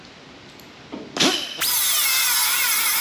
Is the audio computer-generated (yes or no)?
no